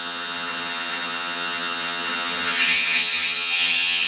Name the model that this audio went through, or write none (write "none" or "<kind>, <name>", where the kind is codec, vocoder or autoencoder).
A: vocoder, HiFi-GAN